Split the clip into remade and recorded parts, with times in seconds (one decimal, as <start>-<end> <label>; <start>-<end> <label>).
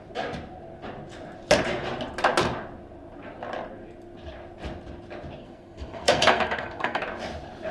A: 0.0-5.4 recorded; 5.4-7.0 remade; 7.0-7.7 recorded